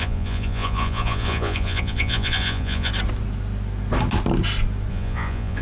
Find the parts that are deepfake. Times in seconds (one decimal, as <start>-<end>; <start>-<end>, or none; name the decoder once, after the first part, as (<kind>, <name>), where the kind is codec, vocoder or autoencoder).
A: 0.0-2.9 (vocoder, Vocos); 4.9-5.6